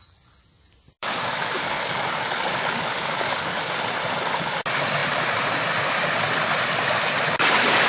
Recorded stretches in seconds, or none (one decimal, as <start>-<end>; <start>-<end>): 0.0-1.0; 3.6-7.9